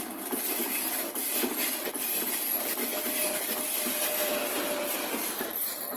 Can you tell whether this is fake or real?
real